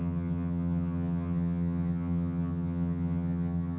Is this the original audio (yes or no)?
no